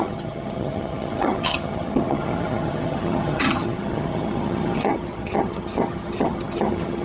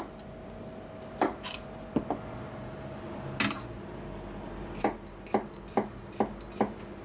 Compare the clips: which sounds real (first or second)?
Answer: second